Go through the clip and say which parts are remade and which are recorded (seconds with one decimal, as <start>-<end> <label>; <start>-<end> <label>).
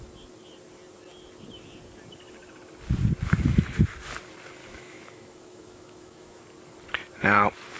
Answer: 0.0-4.6 recorded; 4.6-6.4 remade; 6.4-7.8 recorded